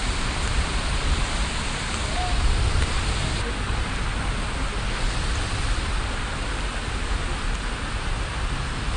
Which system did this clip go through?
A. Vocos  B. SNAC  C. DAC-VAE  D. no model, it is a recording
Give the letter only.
D